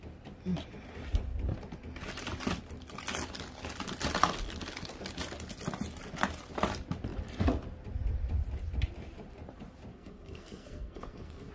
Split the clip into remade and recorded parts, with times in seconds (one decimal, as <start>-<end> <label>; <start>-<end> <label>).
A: 0.0-9.9 recorded; 9.9-11.5 remade